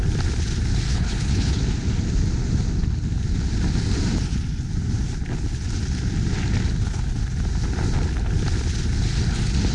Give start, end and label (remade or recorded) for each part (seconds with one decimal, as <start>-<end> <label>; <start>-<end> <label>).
0.0-0.9 recorded; 0.9-1.6 remade; 1.6-9.7 recorded